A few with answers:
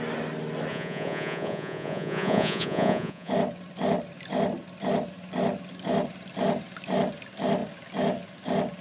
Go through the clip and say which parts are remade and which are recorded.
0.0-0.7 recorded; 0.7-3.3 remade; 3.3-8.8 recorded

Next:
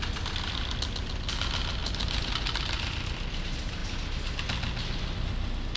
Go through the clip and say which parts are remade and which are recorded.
0.0-5.8 recorded

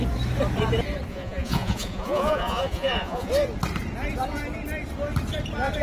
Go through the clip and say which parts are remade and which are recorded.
0.0-1.1 recorded; 1.1-3.3 remade; 3.3-5.8 recorded

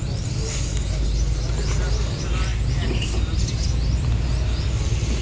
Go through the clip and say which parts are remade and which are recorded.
0.0-5.2 recorded

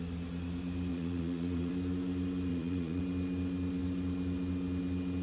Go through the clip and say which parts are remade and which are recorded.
0.0-0.9 recorded; 0.9-1.7 remade; 1.7-2.5 recorded; 2.5-3.0 remade; 3.0-5.2 recorded

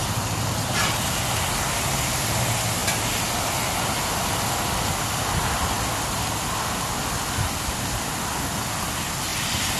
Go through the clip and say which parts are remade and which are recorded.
0.0-9.8 recorded

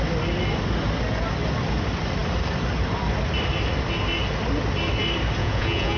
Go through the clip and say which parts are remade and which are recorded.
0.0-5.4 recorded; 5.4-6.0 remade

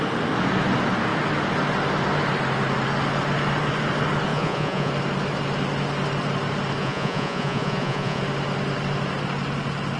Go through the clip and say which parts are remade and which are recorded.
0.0-4.3 recorded; 4.3-4.9 remade; 4.9-6.8 recorded; 6.8-8.2 remade; 8.2-10.0 recorded